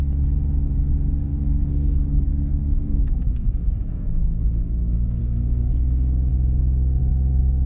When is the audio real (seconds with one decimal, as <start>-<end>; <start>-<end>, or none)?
0.0-1.3; 4.4-5.2; 5.7-7.7